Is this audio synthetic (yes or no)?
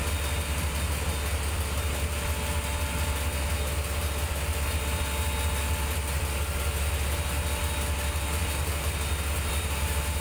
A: no